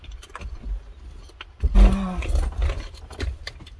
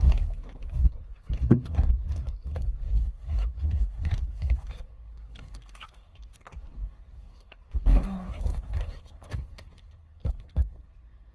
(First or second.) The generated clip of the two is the second